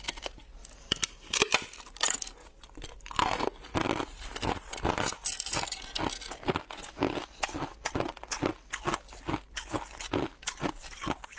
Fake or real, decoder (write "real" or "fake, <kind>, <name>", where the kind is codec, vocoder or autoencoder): real